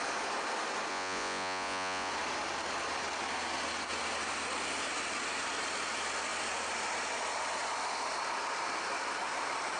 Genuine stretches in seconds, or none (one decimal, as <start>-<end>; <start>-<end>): 0.0-0.9; 2.1-9.8